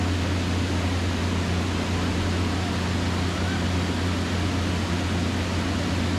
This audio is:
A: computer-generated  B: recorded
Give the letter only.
B